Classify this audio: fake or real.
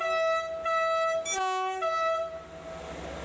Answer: real